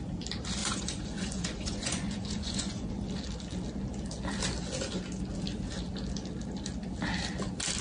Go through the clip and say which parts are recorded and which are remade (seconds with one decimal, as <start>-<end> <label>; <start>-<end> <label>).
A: 0.0-0.6 recorded; 0.6-2.9 remade; 2.9-7.8 recorded